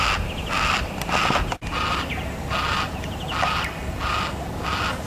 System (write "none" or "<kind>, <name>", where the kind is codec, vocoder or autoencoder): none